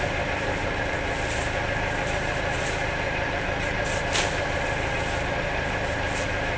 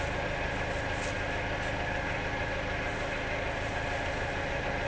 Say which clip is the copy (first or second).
first